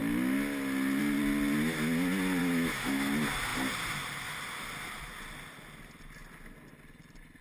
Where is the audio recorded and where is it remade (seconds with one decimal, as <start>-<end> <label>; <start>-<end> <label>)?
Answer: 0.0-2.4 recorded; 2.4-3.1 remade; 3.1-7.4 recorded